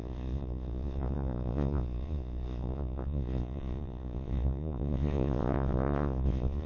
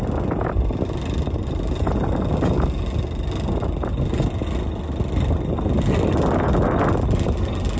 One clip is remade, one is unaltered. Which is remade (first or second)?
first